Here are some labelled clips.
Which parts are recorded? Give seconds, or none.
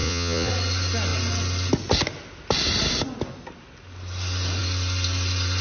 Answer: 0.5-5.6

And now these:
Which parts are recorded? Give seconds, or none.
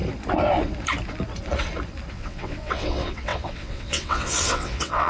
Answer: 0.0-2.1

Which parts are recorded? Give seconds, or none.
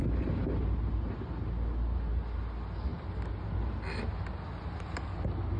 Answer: 0.0-5.6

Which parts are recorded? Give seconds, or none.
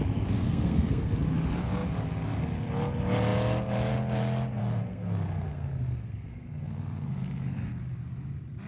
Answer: 0.0-0.4; 1.1-4.6; 7.8-8.7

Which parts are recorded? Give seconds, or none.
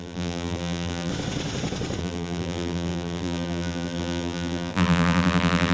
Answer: 1.1-2.0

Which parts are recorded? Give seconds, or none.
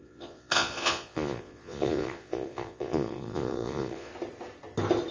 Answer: 4.1-5.1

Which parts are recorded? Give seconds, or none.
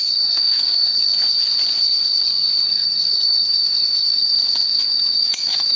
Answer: 1.1-2.6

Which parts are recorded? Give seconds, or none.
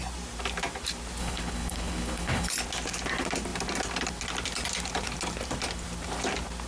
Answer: 0.0-1.2; 2.5-6.7